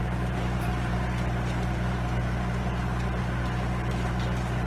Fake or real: real